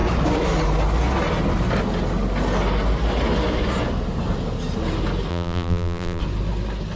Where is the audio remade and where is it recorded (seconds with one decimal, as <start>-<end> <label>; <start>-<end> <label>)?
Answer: 0.0-5.3 recorded; 5.3-6.2 remade; 6.2-7.0 recorded